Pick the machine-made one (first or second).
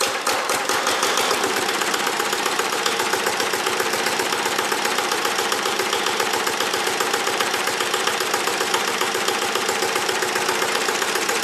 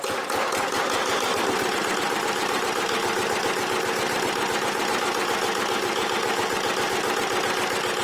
first